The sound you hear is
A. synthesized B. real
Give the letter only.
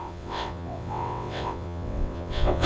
A